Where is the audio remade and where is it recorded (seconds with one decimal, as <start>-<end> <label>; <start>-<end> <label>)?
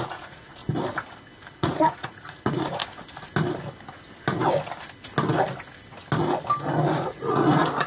0.0-0.6 remade; 0.6-1.5 recorded; 1.5-2.8 remade; 2.8-6.9 recorded; 6.9-7.9 remade